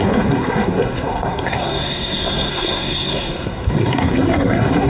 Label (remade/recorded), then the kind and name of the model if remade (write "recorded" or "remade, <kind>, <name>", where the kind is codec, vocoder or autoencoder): remade, codec, SNAC